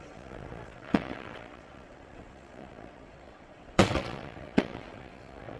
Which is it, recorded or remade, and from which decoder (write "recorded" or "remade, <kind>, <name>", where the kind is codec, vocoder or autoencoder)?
remade, vocoder, WaveNeXt